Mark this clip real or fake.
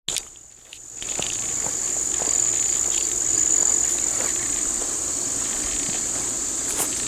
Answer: real